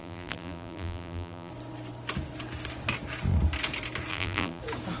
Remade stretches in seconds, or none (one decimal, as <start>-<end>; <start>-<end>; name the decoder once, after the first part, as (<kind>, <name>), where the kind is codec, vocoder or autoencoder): 0.0-1.5 (vocoder, BigVGAN v2); 4.1-4.6